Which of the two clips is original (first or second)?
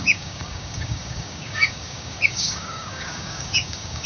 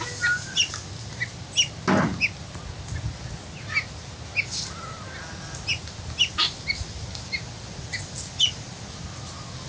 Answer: second